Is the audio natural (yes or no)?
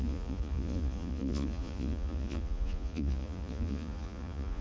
no